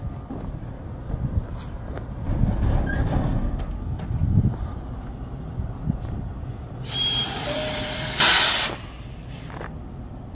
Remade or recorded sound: remade